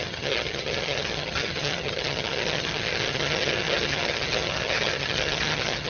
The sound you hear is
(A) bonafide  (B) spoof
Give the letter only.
B